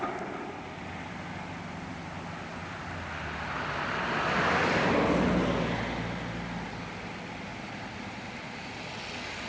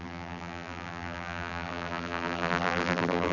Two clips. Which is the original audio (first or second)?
first